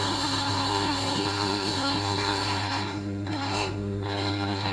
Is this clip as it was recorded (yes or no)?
no